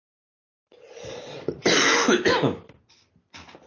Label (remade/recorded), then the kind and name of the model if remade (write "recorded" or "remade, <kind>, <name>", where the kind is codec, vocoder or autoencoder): recorded